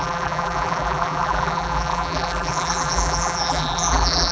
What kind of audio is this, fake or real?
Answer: fake